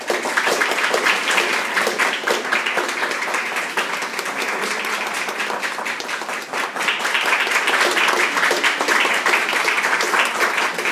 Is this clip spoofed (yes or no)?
no